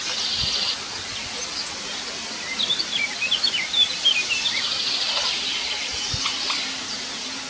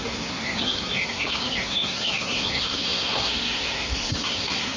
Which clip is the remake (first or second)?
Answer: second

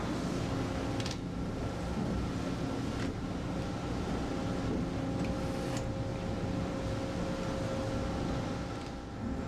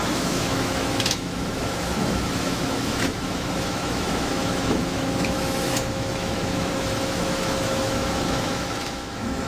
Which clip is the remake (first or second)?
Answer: second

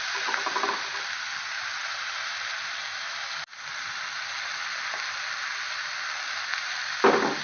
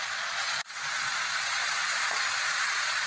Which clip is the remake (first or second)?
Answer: second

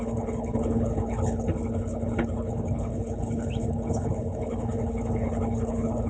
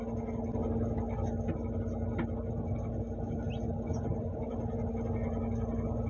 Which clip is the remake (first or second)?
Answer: first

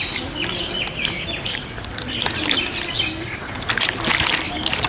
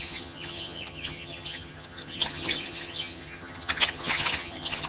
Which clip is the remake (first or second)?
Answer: second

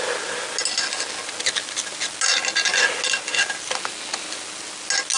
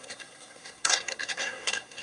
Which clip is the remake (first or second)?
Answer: second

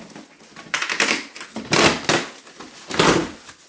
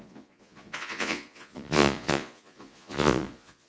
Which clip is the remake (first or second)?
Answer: second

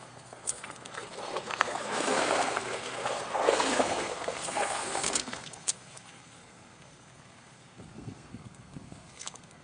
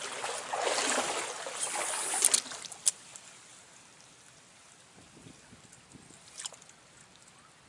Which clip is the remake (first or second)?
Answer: first